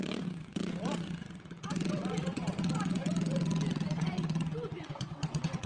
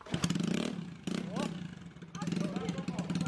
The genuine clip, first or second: second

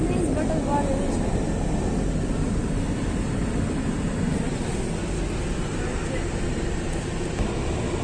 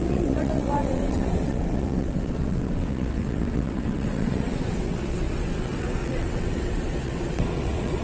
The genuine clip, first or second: first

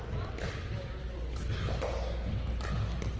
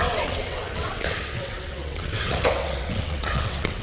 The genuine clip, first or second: first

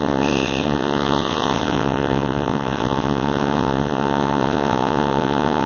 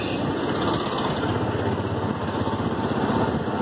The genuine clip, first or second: second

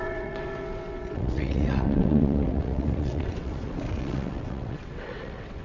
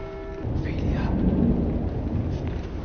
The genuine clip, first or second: second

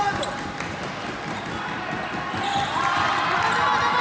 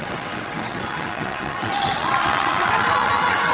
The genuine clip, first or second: first